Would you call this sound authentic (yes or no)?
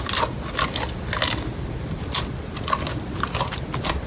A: yes